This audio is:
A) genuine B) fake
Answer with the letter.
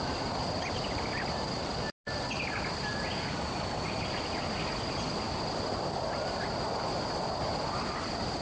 A